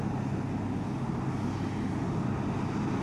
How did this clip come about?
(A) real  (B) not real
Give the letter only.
A